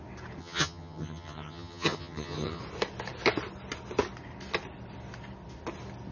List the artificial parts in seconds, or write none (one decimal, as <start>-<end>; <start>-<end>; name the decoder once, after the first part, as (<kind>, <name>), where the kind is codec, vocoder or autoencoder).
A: 0.4-2.6 (vocoder, HiFi-GAN)